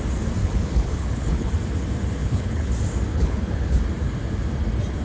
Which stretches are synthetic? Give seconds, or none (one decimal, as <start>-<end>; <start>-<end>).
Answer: 0.4-1.5; 2.2-2.7; 3.1-3.8